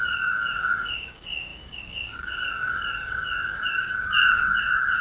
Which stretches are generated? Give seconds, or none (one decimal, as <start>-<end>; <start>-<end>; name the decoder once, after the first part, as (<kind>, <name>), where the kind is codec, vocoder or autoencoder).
0.0-5.0 (codec, DAC)